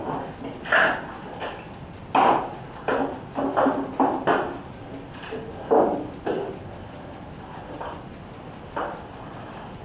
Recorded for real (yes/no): yes